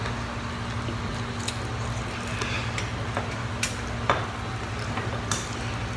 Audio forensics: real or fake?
real